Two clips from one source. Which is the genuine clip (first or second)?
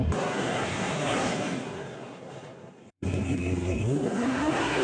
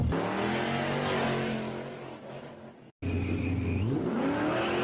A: second